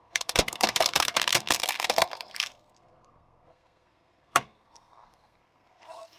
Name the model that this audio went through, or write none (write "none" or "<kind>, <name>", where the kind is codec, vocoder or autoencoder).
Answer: codec, SNAC